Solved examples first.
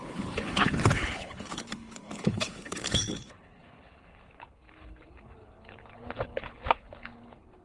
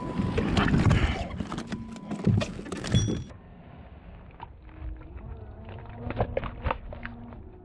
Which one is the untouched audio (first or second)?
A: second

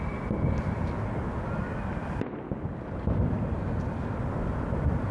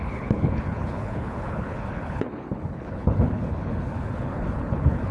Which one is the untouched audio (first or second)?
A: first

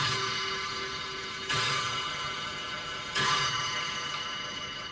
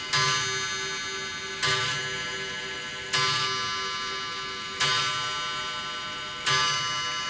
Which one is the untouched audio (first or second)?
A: second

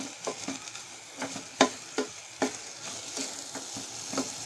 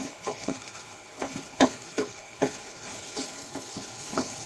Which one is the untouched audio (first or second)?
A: first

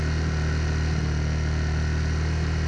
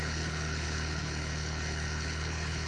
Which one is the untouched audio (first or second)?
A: first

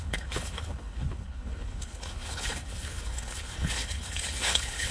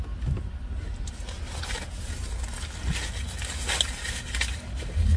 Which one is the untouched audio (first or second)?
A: second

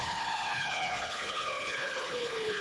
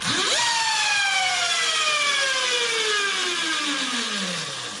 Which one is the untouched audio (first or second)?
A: second